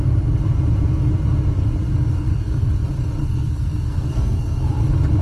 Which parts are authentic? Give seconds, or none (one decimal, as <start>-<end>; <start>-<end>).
0.0-2.1; 2.7-3.2; 4.7-5.2